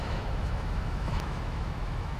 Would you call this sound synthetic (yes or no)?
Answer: yes